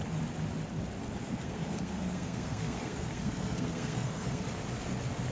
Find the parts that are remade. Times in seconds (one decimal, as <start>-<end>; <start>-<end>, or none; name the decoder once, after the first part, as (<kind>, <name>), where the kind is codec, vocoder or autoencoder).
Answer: 1.2-4.4 (codec, SNAC)